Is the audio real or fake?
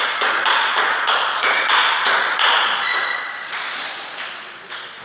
fake